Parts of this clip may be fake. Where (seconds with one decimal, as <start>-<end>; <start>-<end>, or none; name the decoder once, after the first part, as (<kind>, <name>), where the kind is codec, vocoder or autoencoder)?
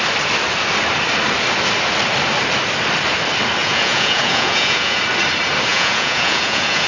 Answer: 3.6-5.0 (vocoder, Vocos); 5.7-6.9